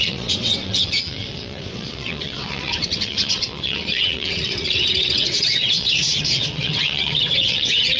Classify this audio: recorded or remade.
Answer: remade